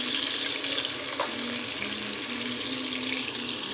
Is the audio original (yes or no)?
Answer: yes